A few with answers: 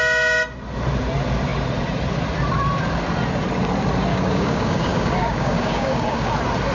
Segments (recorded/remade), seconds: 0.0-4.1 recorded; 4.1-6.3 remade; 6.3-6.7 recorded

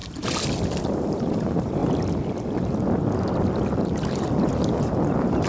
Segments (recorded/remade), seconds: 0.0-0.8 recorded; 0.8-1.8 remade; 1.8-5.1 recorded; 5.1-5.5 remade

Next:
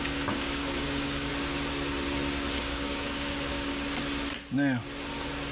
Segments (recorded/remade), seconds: 0.0-1.3 remade; 1.3-2.6 recorded; 2.6-3.7 remade; 3.7-5.5 recorded

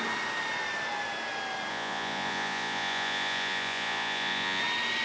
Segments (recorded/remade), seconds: 0.0-1.7 recorded; 1.7-4.6 remade; 4.6-5.0 recorded